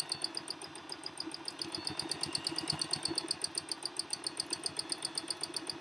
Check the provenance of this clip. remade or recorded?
recorded